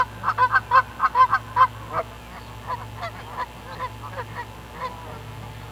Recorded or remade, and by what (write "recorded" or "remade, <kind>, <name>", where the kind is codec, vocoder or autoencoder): recorded